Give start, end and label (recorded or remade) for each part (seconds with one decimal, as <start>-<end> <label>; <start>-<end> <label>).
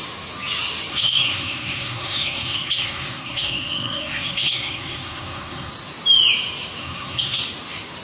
0.0-0.9 recorded; 0.9-5.7 remade; 5.7-6.8 recorded; 6.8-7.4 remade; 7.4-8.0 recorded